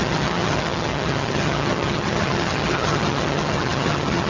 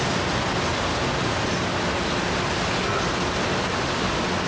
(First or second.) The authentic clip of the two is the second